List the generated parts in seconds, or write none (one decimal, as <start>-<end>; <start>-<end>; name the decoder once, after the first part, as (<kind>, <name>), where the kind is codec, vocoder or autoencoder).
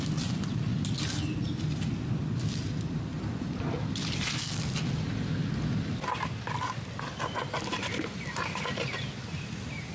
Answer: none